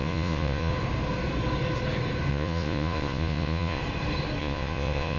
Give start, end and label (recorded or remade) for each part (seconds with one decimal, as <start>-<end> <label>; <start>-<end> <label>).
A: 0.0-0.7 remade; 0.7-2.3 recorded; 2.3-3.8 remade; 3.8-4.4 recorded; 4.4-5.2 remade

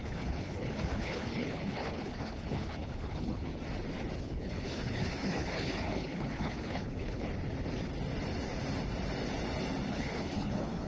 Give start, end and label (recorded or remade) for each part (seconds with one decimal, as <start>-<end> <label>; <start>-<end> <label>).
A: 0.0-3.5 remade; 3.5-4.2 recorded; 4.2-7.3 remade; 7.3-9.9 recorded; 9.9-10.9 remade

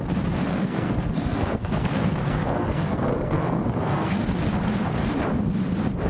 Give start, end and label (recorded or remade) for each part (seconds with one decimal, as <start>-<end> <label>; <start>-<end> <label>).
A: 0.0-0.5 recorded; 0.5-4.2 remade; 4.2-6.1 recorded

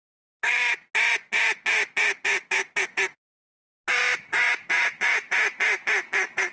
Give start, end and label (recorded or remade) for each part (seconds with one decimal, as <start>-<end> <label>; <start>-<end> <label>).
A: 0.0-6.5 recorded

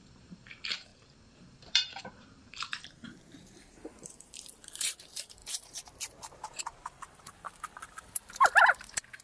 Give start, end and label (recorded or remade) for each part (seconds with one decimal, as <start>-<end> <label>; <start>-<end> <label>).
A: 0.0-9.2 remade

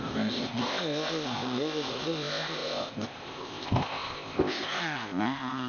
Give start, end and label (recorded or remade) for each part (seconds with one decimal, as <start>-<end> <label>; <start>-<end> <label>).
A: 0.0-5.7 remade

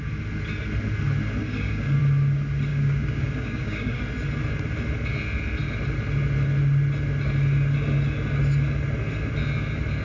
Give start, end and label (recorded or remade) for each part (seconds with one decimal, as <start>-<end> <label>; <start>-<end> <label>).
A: 0.0-1.4 recorded; 1.4-2.0 remade; 2.0-2.7 recorded; 2.7-4.0 remade; 4.0-10.0 recorded